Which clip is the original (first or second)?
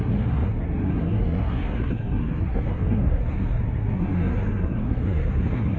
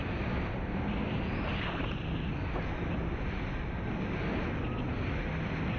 second